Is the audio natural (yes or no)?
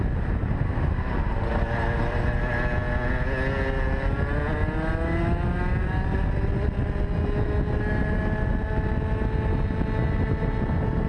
yes